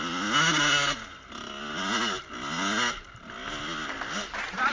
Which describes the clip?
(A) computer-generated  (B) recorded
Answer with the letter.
B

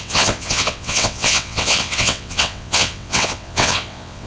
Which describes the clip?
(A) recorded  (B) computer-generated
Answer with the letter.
B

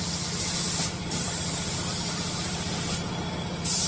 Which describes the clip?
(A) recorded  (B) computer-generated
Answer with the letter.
A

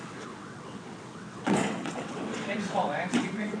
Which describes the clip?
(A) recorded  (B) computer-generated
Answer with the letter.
B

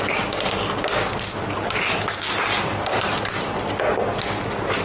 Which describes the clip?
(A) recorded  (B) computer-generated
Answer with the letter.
A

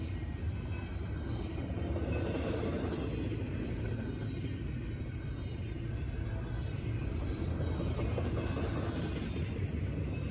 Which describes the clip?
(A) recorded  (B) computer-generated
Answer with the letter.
A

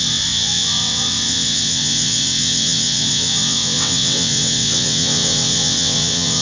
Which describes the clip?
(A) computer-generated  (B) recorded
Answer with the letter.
A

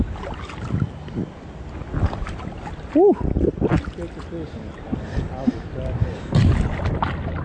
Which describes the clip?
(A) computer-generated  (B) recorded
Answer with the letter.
B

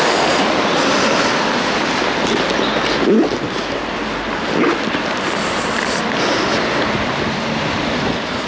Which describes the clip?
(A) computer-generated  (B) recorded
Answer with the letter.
B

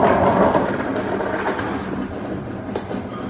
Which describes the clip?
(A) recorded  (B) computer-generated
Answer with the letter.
A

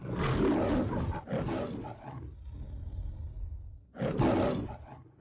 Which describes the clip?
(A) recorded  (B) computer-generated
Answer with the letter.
A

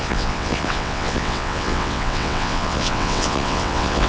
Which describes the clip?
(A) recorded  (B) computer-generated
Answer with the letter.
B